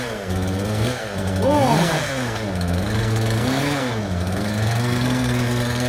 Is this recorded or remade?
remade